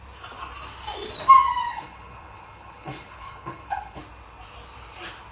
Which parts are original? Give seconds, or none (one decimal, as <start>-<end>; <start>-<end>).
0.0-1.7; 4.0-5.3